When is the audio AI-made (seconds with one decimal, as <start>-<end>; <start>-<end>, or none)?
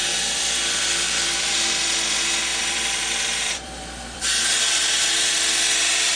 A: 0.0-1.7; 2.5-4.4